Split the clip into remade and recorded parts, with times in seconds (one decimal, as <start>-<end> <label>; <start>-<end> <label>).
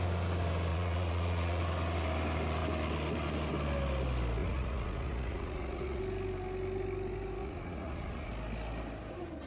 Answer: 0.0-0.7 recorded; 0.7-1.6 remade; 1.6-4.4 recorded; 4.4-6.0 remade; 6.0-7.4 recorded; 7.4-8.3 remade; 8.3-9.5 recorded